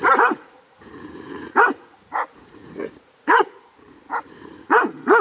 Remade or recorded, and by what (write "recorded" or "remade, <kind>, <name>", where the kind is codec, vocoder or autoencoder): remade, vocoder, Vocos